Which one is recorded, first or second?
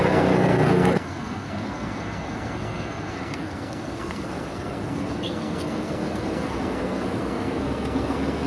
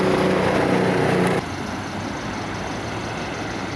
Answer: second